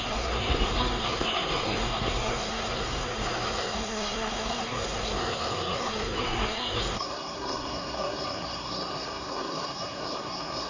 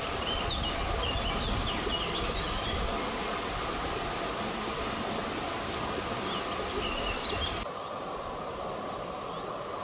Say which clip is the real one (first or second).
second